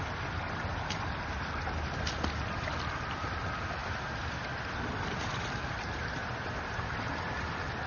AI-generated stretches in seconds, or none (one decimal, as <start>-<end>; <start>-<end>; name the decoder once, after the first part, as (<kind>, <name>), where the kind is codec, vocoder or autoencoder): 3.8-7.5 (vocoder, BigVGAN v2)